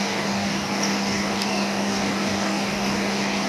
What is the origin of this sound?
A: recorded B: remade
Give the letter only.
B